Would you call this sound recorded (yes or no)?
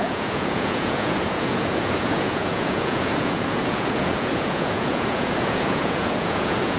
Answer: no